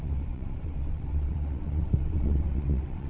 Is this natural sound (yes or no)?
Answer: no